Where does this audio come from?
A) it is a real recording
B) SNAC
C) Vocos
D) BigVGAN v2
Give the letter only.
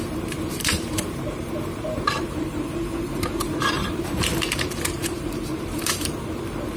D